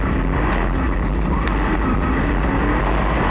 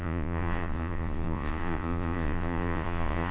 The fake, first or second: second